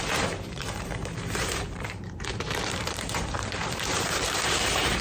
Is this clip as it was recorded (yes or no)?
no